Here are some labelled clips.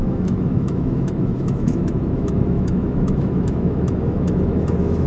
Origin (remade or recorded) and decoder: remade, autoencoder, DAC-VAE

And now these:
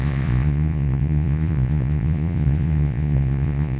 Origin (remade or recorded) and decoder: remade, vocoder, Vocos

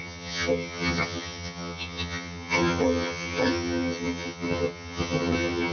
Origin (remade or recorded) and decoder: remade, vocoder, HiFi-GAN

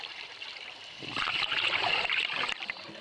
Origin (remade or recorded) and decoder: recorded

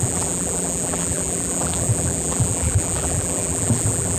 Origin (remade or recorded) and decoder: remade, vocoder, BigVGAN v2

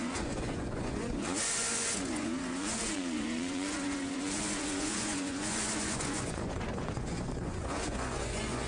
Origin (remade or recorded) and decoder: remade, vocoder, Vocos